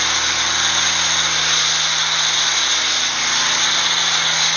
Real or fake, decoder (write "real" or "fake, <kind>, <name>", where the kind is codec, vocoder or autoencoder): real